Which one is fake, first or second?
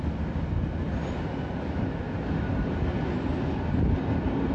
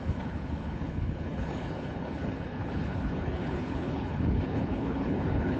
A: second